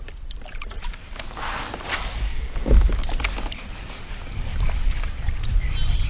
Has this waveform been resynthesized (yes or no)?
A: no